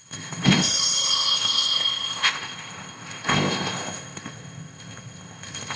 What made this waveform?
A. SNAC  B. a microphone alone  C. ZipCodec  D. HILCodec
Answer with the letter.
C